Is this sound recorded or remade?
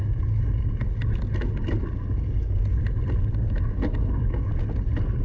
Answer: recorded